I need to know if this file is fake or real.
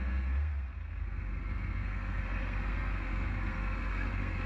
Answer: fake